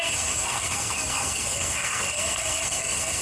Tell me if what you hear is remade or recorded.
remade